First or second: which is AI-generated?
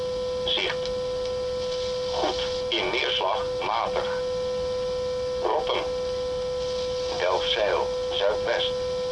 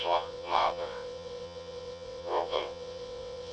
second